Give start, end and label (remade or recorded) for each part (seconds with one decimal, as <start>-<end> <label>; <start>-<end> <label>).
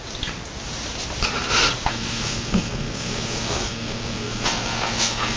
0.0-1.9 recorded; 1.9-5.4 remade